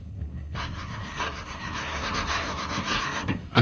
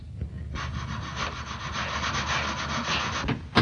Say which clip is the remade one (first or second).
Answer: first